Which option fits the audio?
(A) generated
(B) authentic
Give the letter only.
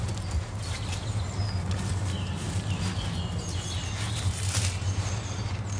B